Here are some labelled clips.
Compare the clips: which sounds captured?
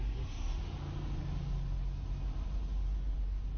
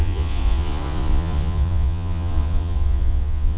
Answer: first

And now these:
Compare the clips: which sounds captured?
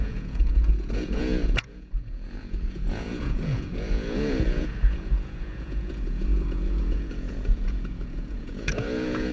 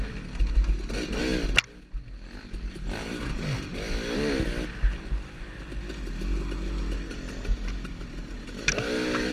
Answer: second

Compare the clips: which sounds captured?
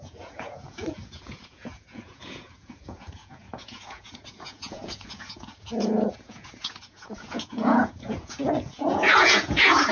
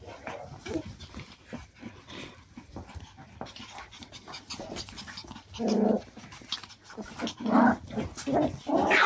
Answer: second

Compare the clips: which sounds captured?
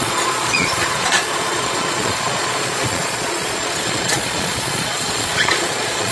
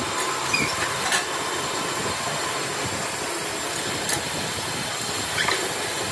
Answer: second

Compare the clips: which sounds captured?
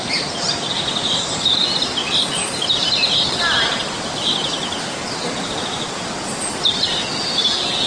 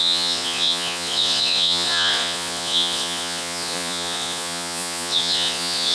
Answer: first